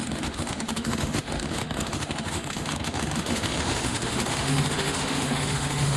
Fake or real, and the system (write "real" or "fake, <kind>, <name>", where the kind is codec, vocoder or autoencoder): fake, autoencoder, DAC-VAE